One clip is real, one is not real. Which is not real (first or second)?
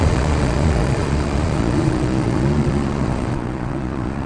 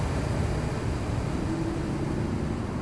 first